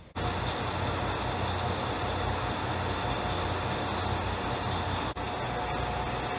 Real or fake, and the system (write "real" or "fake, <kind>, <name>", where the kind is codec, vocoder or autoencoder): real